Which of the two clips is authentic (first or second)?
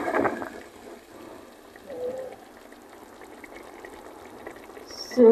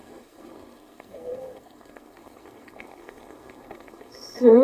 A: first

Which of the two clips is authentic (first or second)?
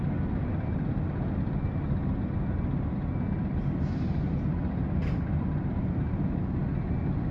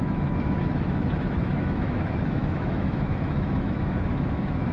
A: first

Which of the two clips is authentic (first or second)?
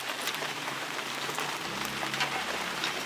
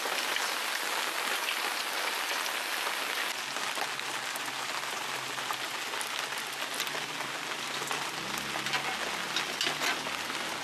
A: second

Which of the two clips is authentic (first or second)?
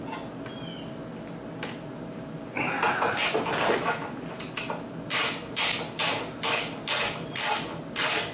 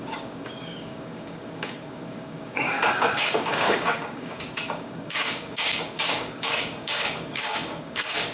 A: first